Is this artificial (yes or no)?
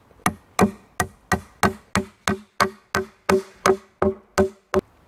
no